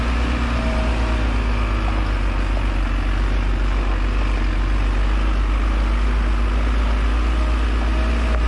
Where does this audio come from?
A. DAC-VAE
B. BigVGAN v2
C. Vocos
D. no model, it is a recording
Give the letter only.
D